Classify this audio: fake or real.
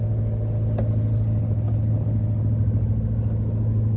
real